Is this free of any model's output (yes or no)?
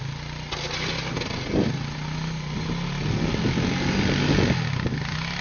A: yes